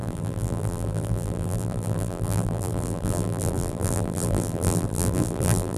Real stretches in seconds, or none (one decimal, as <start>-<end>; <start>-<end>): none